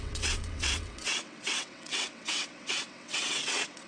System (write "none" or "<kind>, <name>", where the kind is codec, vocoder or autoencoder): vocoder, WaveNeXt